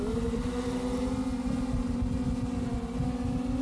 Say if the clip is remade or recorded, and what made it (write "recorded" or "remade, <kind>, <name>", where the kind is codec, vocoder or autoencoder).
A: recorded